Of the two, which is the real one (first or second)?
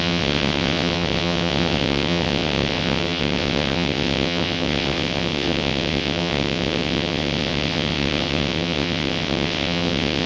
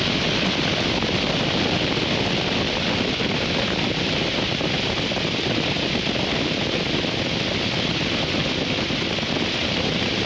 second